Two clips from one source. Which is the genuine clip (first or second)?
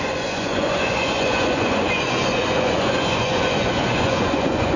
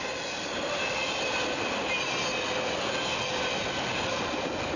second